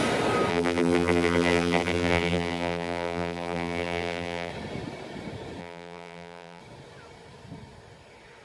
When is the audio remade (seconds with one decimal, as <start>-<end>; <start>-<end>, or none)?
0.5-4.5; 5.6-6.6